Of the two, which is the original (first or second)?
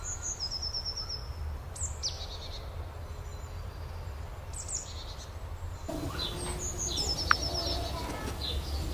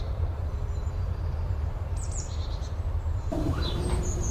first